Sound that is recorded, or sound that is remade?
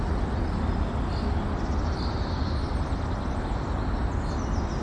recorded